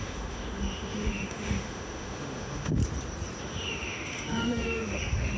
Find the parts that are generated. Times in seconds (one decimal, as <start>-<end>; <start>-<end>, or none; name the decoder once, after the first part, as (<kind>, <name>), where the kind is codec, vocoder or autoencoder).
0.0-2.8 (autoencoder, DAC-VAE); 3.4-5.4